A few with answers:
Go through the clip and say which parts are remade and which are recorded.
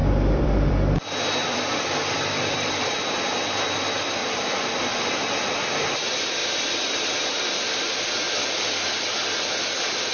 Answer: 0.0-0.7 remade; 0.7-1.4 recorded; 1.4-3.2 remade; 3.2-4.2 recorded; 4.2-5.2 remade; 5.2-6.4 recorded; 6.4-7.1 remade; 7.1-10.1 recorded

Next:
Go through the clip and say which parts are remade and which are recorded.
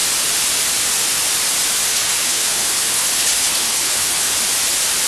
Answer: 0.0-1.9 recorded; 1.9-4.4 remade; 4.4-5.1 recorded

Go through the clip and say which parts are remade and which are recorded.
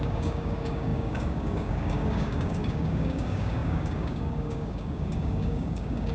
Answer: 0.0-6.1 remade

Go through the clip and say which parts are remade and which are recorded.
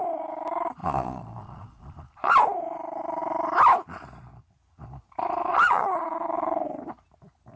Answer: 0.0-0.8 recorded; 0.8-2.3 remade; 2.3-5.5 recorded; 5.5-6.8 remade; 6.8-7.6 recorded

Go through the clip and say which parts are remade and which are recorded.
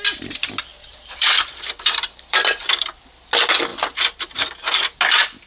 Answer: 0.0-0.7 recorded; 0.7-2.8 remade; 2.8-5.5 recorded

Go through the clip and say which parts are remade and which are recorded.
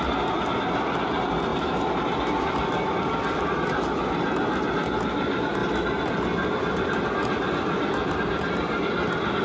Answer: 0.0-9.4 recorded